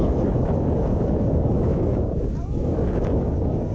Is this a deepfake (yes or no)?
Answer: yes